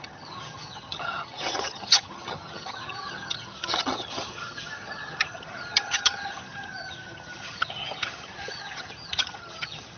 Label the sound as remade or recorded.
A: remade